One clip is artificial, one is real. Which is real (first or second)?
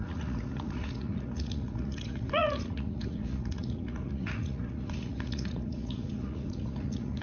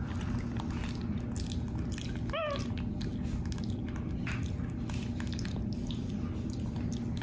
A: second